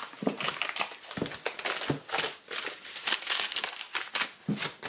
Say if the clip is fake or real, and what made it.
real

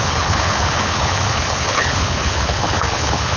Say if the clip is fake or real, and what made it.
fake, codec, HILCodec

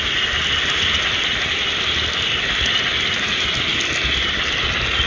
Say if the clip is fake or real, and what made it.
real